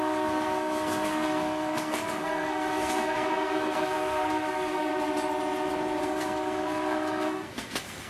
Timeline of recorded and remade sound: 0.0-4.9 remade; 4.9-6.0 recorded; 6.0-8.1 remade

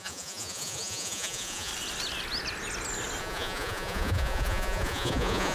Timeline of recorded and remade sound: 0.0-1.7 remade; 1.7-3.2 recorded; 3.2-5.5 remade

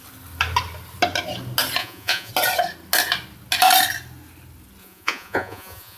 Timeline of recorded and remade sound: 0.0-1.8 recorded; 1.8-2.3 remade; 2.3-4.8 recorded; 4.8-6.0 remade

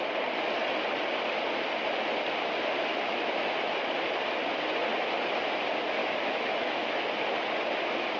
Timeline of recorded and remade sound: 0.0-2.9 recorded; 2.9-3.5 remade; 3.5-6.0 recorded; 6.0-7.0 remade; 7.0-8.2 recorded